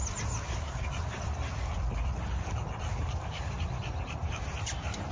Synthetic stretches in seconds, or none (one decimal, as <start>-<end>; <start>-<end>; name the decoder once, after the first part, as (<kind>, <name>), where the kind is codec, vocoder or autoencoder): 0.0-5.1 (vocoder, BigVGAN v2)